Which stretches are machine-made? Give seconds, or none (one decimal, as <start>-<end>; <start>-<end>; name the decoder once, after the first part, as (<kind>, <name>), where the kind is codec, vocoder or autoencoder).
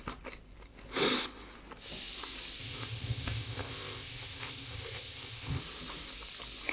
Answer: 2.6-5.6 (codec, ZipCodec)